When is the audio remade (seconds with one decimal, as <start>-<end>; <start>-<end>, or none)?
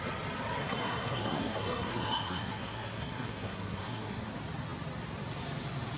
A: 0.6-4.2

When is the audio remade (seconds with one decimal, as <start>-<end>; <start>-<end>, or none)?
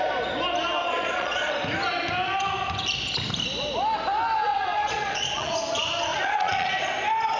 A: 0.8-1.5; 4.5-5.5; 6.1-6.7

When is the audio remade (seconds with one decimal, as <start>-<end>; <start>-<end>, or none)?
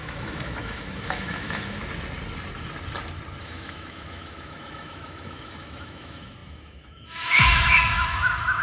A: 0.0-1.8; 3.4-8.6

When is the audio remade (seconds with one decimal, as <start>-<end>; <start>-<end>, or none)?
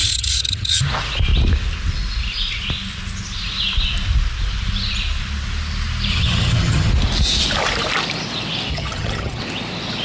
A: 0.0-0.8; 6.1-6.9; 8.7-9.4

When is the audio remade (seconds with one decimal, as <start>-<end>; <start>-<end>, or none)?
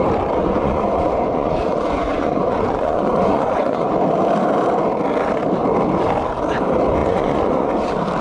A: 0.4-3.9; 7.0-7.7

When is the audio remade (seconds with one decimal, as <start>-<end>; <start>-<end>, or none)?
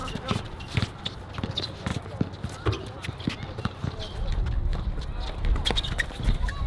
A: 0.0-1.9; 3.1-6.7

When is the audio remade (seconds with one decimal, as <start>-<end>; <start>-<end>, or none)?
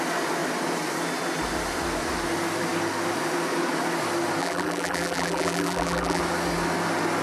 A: 4.4-6.2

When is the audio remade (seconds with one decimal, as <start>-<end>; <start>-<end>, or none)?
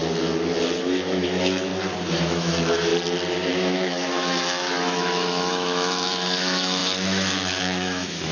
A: 0.8-1.7; 2.2-2.9; 3.5-8.3